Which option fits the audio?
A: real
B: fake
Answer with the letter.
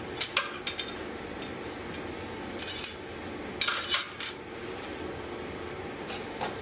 A